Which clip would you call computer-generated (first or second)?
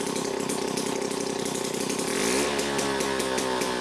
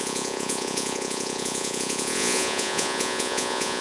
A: second